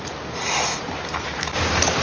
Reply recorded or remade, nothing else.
recorded